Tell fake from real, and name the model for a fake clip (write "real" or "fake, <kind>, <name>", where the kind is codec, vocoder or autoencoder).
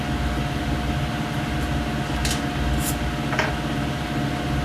real